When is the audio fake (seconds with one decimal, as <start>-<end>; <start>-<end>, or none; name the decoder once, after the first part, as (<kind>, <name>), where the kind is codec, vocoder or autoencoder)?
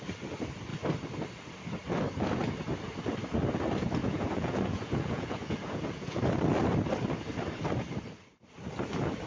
4.0-6.2 (vocoder, Vocos)